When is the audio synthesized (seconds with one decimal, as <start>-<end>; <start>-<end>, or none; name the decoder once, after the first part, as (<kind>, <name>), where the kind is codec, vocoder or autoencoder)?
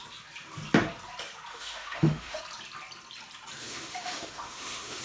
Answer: 1.5-2.4 (autoencoder, DAC-VAE); 3.6-5.0